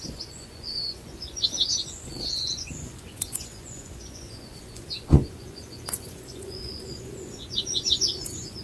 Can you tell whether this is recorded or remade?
remade